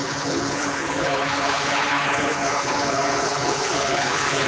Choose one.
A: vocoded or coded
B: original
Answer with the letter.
A